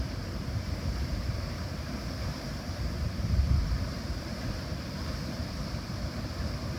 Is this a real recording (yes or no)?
no